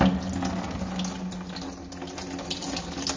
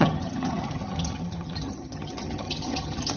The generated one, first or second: second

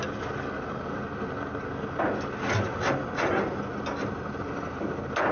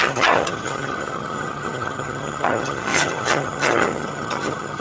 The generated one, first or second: second